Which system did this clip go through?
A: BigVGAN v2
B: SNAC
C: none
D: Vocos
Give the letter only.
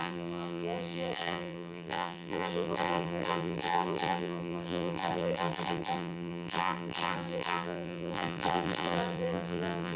A